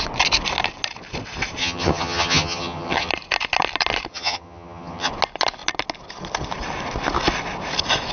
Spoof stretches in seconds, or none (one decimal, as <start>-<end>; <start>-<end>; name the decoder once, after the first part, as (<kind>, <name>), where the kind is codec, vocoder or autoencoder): 1.6-3.1 (vocoder, HiFi-GAN); 4.1-5.1